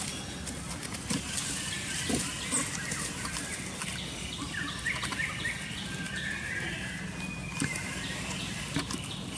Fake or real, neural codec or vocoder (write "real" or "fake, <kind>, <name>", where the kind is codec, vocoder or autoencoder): real